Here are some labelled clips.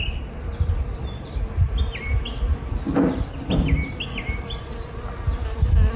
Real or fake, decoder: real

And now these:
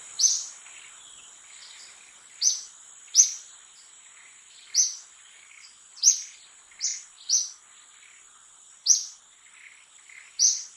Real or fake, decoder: real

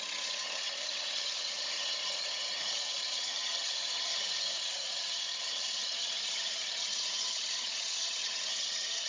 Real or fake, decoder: fake, vocoder, HiFi-GAN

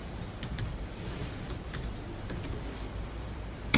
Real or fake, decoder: fake, vocoder, BigVGAN v2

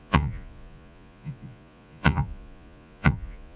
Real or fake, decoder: fake, vocoder, Vocos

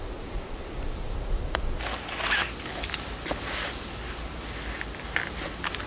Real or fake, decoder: real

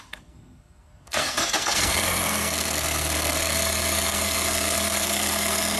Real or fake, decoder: fake, codec, SNAC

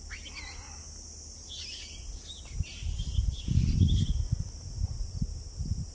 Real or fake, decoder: real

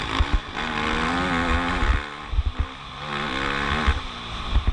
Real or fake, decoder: real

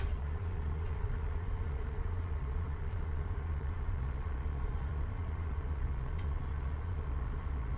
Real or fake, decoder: fake, vocoder, Vocos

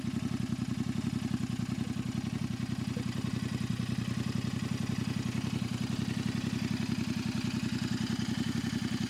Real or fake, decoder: real